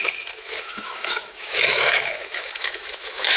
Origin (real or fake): fake